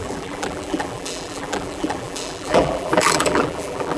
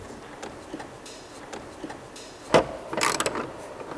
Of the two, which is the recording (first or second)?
second